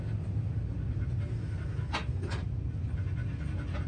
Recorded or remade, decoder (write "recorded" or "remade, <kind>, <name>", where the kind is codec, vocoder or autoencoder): recorded